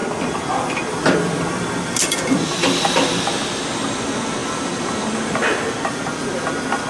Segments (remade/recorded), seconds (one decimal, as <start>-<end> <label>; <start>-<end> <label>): 0.0-2.5 remade; 2.5-4.4 recorded; 4.4-6.5 remade; 6.5-6.9 recorded